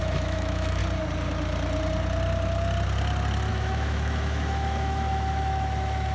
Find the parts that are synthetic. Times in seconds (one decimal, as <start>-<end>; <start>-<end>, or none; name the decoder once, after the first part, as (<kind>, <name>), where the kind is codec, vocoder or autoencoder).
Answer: 0.0-0.8 (autoencoder, DAC-VAE); 3.5-6.1